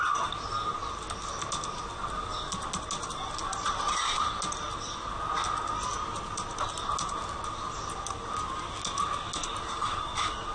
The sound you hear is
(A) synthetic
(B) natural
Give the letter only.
B